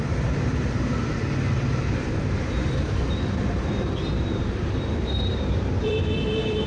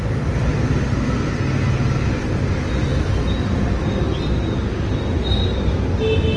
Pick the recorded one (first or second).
second